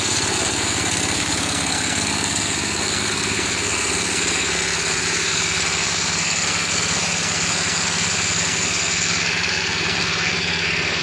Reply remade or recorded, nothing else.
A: remade